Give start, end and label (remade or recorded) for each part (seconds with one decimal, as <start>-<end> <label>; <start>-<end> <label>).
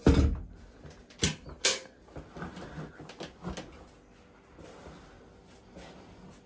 0.0-6.5 recorded